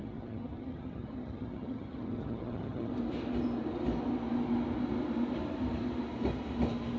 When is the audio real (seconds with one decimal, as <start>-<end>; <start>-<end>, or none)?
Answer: 2.9-7.0